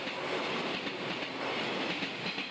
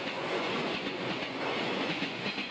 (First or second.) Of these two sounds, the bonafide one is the first